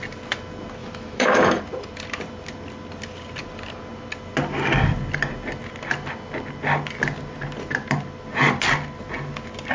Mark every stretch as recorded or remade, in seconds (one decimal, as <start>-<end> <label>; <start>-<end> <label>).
0.0-0.8 recorded; 0.8-1.6 remade; 1.6-9.7 recorded